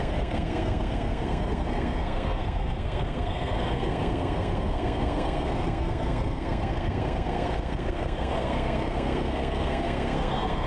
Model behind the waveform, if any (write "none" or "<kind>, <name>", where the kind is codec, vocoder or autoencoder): codec, SNAC